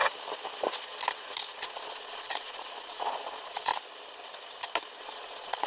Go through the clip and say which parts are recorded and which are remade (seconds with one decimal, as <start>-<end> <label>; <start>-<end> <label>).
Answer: 0.0-1.6 recorded; 1.6-3.7 remade; 3.7-5.0 recorded; 5.0-5.7 remade